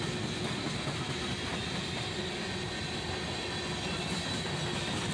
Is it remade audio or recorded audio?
recorded